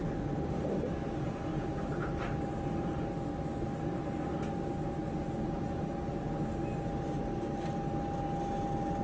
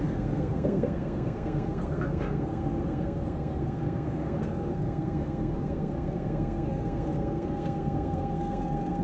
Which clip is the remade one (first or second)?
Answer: second